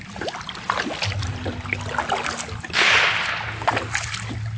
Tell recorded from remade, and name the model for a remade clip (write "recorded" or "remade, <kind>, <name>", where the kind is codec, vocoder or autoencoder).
recorded